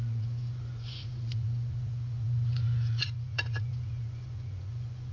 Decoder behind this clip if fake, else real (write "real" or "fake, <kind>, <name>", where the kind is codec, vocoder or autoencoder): fake, vocoder, Vocos